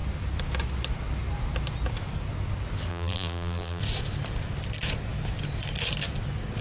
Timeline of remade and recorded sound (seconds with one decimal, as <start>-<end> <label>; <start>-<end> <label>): 0.0-2.9 recorded; 2.9-3.8 remade; 3.8-6.6 recorded